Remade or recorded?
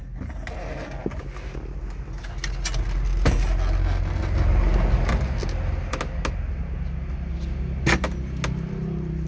recorded